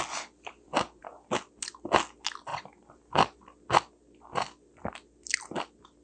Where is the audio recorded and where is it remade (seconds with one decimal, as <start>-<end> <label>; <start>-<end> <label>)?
0.0-6.0 recorded